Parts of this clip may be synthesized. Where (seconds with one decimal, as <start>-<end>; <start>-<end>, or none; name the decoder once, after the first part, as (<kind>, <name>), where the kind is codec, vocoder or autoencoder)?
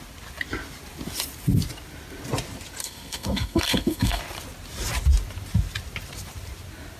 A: 2.8-4.2 (codec, SNAC)